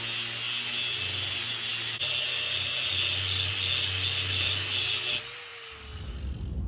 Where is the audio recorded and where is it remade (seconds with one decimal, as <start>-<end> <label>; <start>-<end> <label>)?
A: 0.0-6.7 recorded

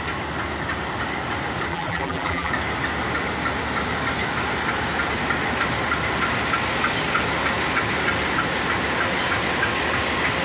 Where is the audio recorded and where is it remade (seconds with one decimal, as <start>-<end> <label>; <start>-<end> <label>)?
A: 0.0-1.7 recorded; 1.7-2.5 remade; 2.5-10.4 recorded

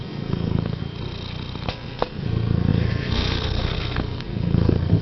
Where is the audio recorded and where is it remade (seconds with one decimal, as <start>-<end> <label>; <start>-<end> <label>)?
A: 0.0-0.8 remade; 0.8-1.7 recorded; 1.7-5.0 remade

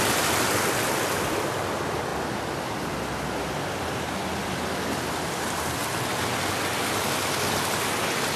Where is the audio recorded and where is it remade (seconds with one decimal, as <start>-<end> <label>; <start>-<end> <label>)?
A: 0.0-8.4 recorded

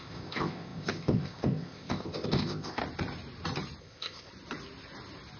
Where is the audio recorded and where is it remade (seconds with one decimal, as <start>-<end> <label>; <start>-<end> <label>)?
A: 0.0-2.8 remade; 2.8-3.8 recorded; 3.8-4.3 remade; 4.3-5.4 recorded

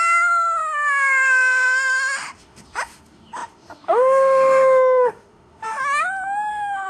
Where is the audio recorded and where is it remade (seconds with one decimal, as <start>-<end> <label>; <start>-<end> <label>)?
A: 0.0-5.8 remade; 5.8-6.5 recorded; 6.5-6.9 remade